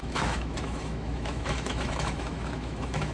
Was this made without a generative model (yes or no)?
no